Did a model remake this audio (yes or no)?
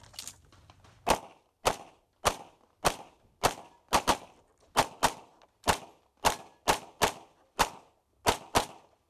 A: no